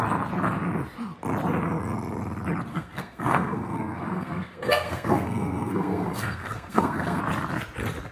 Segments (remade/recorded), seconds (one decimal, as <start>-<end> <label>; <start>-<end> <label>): 0.0-2.7 recorded; 2.7-7.2 remade; 7.2-8.1 recorded

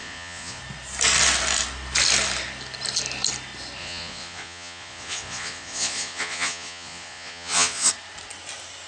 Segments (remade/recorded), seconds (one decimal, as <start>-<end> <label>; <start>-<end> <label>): 0.0-0.6 remade; 0.6-3.8 recorded; 3.8-7.9 remade; 7.9-8.9 recorded